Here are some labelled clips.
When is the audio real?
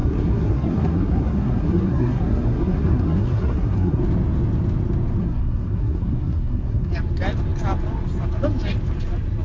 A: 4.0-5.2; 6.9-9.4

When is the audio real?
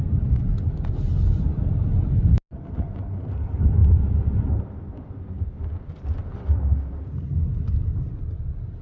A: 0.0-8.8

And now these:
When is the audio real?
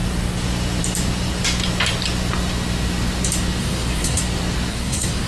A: 0.0-3.6; 4.2-4.7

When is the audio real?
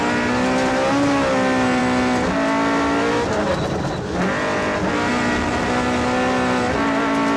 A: 0.0-7.4